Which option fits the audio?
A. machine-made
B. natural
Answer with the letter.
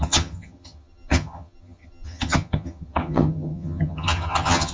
A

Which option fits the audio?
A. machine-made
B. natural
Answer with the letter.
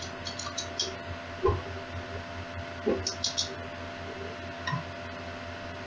B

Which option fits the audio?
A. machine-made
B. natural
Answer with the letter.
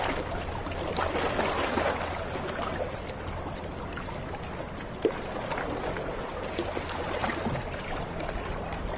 B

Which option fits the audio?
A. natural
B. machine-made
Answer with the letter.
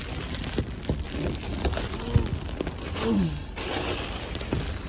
A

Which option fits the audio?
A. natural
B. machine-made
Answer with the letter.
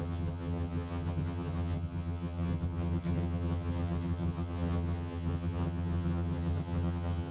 B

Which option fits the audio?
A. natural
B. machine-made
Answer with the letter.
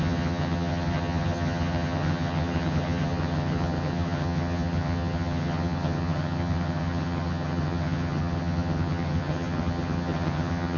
B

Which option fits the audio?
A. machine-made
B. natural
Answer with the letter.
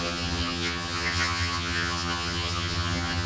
A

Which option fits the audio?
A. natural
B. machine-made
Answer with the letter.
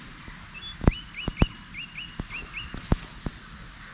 A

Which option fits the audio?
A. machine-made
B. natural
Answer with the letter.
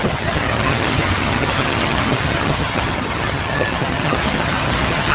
A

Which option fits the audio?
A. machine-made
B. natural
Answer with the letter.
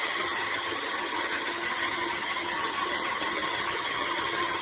A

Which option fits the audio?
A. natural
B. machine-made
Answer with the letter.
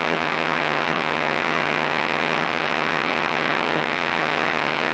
B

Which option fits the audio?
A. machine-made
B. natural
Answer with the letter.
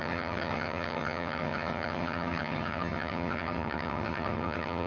A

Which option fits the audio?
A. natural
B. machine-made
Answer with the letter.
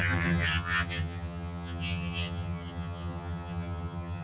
B